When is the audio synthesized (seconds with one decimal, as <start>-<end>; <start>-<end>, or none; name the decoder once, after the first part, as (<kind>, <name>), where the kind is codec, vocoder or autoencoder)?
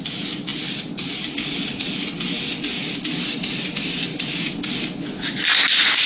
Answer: none